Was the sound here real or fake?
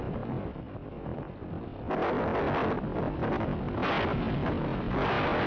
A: real